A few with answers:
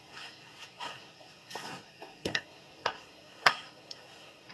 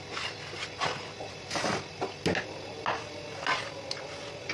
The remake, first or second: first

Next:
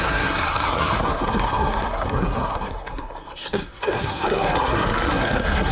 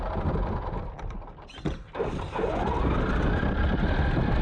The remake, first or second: first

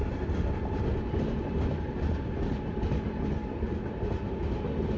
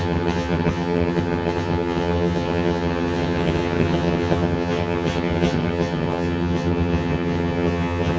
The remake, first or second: second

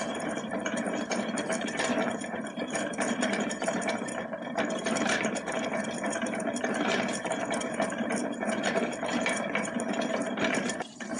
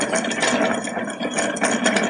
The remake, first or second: first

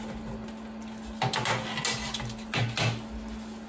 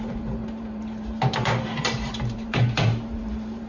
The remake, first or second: second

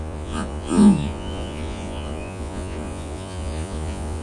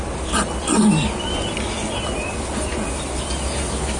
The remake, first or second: first